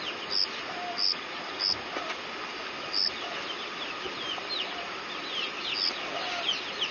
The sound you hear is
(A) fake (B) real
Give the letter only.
B